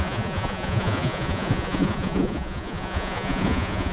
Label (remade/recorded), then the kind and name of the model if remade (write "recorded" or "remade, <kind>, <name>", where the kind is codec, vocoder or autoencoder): remade, vocoder, Vocos